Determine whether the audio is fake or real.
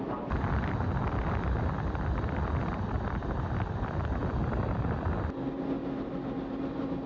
real